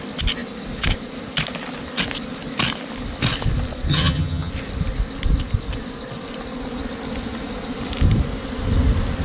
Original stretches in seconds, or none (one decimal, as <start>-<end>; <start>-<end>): 0.0-3.9; 4.5-9.2